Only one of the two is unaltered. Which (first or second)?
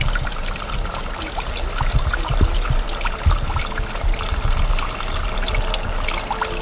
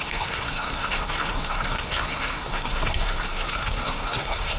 first